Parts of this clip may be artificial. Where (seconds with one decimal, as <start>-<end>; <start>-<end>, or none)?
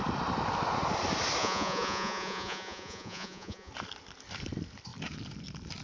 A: 1.4-3.7